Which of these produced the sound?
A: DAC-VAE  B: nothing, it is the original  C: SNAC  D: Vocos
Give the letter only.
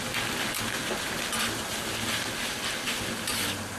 B